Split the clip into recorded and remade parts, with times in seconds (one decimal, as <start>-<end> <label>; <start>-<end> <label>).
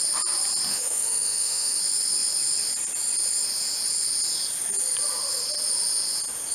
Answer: 0.0-0.7 recorded; 0.7-1.8 remade; 1.8-6.5 recorded